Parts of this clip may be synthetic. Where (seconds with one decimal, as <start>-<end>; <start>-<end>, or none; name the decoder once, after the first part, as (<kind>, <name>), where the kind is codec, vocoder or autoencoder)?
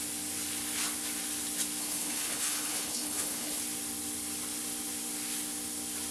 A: 1.8-3.6 (codec, HILCodec)